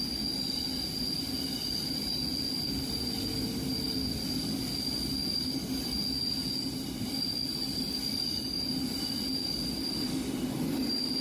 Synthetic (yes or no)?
no